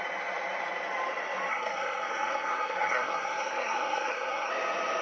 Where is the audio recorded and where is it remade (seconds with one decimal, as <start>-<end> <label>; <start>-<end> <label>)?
0.0-1.5 recorded; 1.5-4.5 remade; 4.5-5.0 recorded